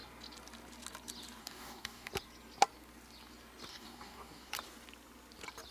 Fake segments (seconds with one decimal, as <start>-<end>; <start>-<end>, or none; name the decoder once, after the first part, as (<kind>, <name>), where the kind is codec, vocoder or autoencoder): 1.4-2.1 (codec, DAC); 3.7-4.5